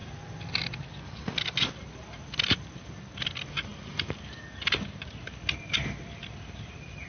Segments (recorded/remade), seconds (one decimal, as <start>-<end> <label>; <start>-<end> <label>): 0.0-7.1 recorded